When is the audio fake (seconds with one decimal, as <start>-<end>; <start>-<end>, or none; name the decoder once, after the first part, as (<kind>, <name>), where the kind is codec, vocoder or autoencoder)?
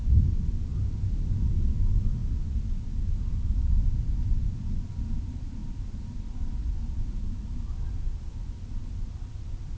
none